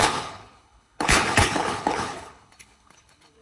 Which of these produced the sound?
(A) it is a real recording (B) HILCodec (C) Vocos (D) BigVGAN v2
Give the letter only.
B